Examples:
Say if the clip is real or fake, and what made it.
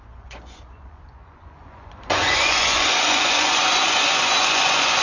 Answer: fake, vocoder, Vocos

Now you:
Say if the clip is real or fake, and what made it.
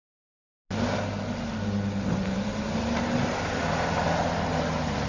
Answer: real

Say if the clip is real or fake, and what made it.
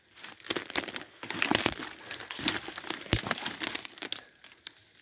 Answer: real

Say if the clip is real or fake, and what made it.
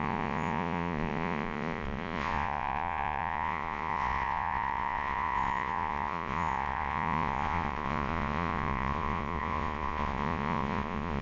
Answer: fake, vocoder, Vocos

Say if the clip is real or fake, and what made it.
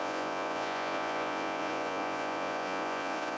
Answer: fake, vocoder, Vocos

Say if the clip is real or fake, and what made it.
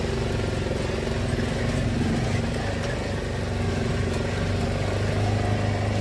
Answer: real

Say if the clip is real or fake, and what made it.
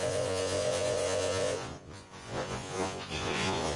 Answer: fake, vocoder, Vocos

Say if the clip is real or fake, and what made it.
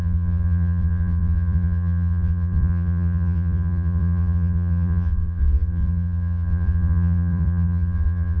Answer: fake, vocoder, Vocos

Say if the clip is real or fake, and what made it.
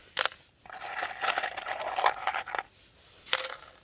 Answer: real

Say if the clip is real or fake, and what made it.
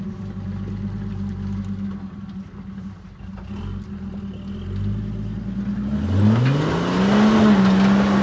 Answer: real